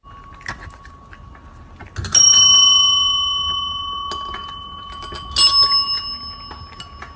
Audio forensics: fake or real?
real